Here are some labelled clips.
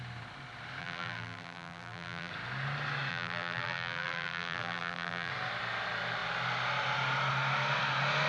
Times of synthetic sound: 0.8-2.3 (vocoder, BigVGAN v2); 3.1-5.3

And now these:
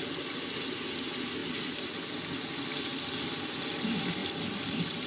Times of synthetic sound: 1.4-2.0 (vocoder, BigVGAN v2); 4.2-5.1